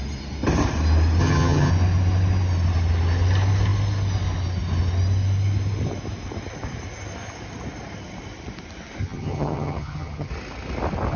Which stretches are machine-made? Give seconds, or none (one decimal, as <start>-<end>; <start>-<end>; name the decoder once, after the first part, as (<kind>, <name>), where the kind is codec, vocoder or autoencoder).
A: 1.2-1.7 (vocoder, HiFi-GAN); 9.0-10.3